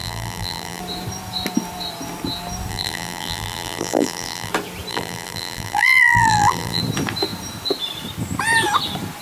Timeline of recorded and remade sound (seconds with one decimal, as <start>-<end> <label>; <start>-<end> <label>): 0.0-0.8 remade; 0.8-2.7 recorded; 2.7-4.5 remade; 4.5-4.9 recorded; 4.9-6.8 remade; 6.8-9.2 recorded